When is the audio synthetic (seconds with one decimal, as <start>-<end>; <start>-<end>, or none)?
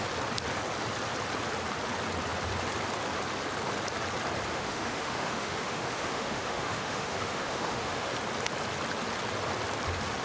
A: 4.5-8.1